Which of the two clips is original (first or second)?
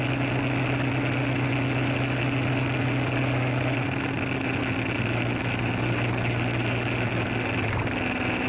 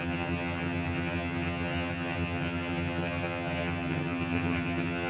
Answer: first